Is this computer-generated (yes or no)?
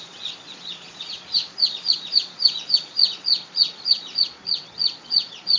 yes